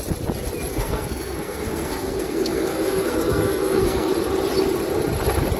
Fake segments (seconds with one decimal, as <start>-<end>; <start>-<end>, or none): 0.7-4.1

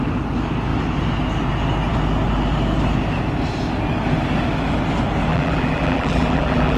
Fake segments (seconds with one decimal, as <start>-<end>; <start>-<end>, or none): 5.3-6.8

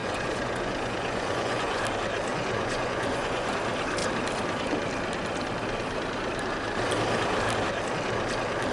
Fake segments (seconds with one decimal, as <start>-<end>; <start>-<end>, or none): 0.0-1.8; 2.3-3.5

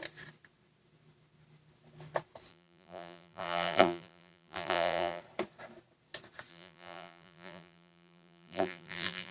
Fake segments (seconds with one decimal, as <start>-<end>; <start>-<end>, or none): 2.5-5.2; 6.5-9.3

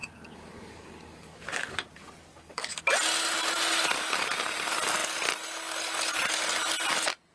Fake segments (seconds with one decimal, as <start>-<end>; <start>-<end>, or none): 0.0-1.9; 2.3-2.8

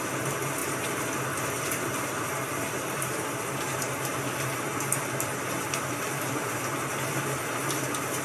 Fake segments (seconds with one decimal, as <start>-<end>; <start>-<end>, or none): none

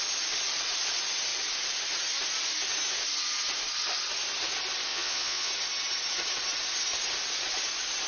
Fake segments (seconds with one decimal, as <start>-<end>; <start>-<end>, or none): 4.9-5.5

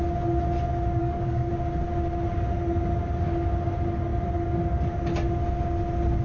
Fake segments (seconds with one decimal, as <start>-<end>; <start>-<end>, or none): 1.0-1.5